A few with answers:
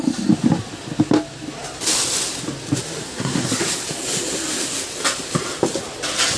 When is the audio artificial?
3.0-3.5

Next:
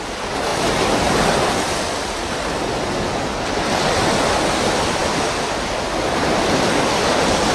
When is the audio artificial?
none

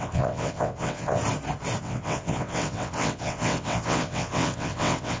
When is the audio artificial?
0.0-1.2; 1.8-5.2

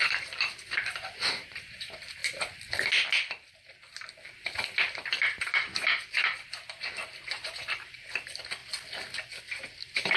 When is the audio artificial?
0.0-2.2; 3.5-3.9; 4.9-8.6; 9.4-10.2

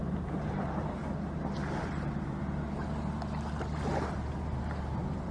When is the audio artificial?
0.0-1.0; 1.8-2.4; 4.1-5.3

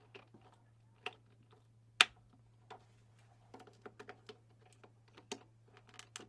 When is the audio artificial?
none

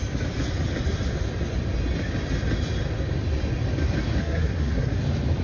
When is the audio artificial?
4.2-5.0

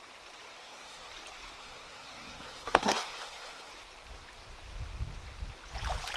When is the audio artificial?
0.6-1.1; 1.6-3.7